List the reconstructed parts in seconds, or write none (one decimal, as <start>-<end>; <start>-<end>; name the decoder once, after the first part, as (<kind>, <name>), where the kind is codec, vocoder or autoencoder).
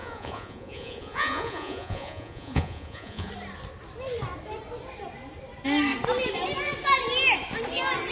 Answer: 0.0-3.3 (vocoder, Vocos)